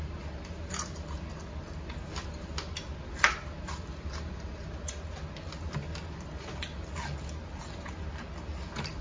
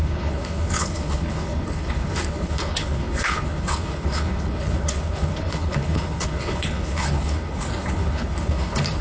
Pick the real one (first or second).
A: first